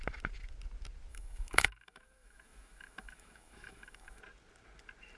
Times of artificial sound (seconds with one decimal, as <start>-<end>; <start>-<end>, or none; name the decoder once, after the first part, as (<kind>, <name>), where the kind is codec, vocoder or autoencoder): 1.1-4.2 (autoencoder, DAC-VAE)